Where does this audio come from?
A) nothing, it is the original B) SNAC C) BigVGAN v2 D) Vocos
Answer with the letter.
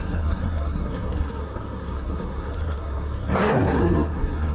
B